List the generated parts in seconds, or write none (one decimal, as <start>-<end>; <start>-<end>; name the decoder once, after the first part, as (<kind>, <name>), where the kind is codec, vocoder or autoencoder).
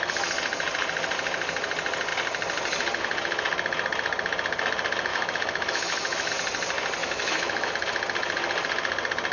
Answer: 5.1-6.3 (autoencoder, DAC-VAE); 7.0-7.7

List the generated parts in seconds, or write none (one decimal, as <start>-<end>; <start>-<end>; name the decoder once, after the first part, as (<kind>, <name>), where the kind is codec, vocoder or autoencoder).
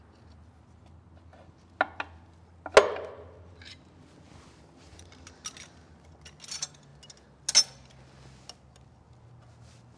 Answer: none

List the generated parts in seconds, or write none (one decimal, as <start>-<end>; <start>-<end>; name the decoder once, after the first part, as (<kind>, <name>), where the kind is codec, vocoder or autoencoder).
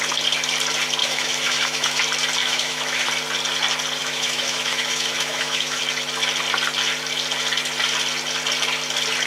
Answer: 1.0-2.0 (autoencoder, DAC-VAE); 2.4-3.1; 4.0-5.8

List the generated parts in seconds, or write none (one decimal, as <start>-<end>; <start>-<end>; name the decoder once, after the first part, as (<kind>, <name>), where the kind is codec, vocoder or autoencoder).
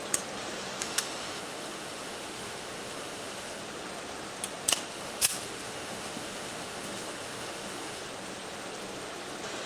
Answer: 0.8-3.6 (autoencoder, DAC-VAE); 4.9-8.0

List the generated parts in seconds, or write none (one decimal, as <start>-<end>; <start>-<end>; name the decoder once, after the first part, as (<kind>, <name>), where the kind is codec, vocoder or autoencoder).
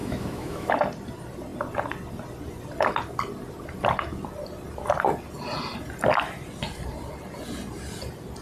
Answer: 0.0-0.7 (autoencoder, DAC-VAE)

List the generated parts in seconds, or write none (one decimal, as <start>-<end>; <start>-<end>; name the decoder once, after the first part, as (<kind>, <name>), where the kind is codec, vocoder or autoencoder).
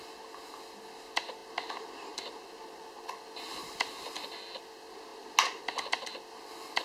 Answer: none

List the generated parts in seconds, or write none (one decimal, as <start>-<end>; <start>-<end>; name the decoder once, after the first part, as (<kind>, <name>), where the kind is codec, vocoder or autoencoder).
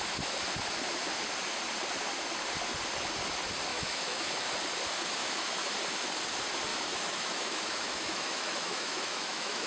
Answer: 3.7-4.5 (autoencoder, DAC-VAE); 5.2-5.7; 6.7-9.7